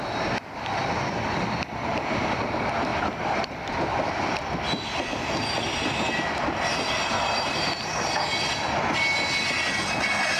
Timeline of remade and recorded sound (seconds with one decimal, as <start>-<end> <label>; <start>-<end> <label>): 0.0-10.4 recorded